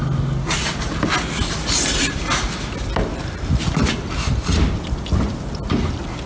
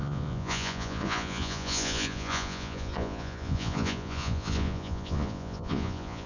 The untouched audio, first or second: first